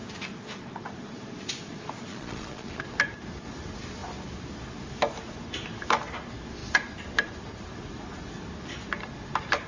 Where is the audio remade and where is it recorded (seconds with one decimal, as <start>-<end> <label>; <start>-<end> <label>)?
0.0-2.1 recorded; 2.1-2.7 remade; 2.7-9.7 recorded